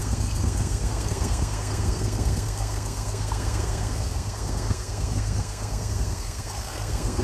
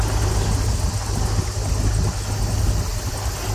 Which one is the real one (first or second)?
second